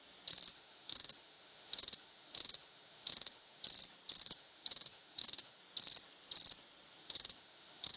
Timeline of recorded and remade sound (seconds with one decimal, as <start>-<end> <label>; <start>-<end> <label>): 0.0-0.5 recorded; 0.5-3.6 remade; 3.6-4.2 recorded; 4.2-5.6 remade; 5.6-7.0 recorded; 7.0-8.0 remade